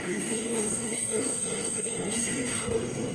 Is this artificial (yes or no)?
yes